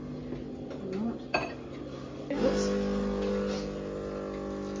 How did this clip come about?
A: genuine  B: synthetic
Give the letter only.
A